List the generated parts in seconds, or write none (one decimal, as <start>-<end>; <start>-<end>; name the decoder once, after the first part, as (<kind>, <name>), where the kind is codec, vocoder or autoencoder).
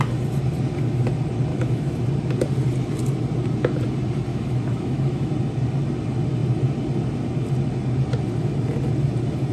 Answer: 1.5-2.1 (autoencoder, DAC-VAE); 4.3-5.3